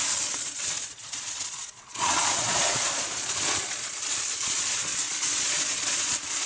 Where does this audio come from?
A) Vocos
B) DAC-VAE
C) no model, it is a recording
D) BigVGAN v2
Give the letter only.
A